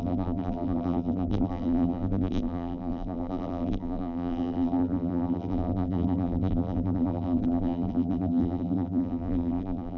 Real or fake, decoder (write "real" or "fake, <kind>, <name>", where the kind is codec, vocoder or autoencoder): fake, vocoder, BigVGAN v2